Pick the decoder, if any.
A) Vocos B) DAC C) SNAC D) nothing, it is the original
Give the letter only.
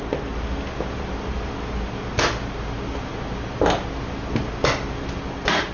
D